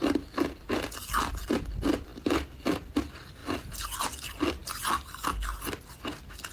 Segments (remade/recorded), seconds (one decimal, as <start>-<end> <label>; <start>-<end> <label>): 0.0-6.5 recorded